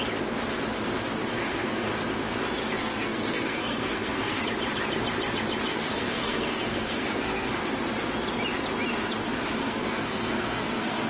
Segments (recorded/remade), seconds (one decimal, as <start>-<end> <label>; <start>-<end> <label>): 0.0-1.4 recorded; 1.4-1.9 remade; 1.9-2.6 recorded; 2.6-4.4 remade; 4.4-5.7 recorded; 5.7-7.5 remade; 7.5-9.6 recorded; 9.6-11.1 remade